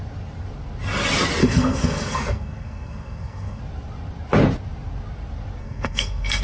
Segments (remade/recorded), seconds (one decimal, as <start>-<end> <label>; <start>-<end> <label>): 0.0-1.4 recorded; 1.4-3.6 remade; 3.6-5.6 recorded; 5.6-6.4 remade